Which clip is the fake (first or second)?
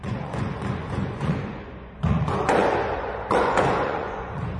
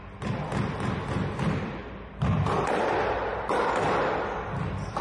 first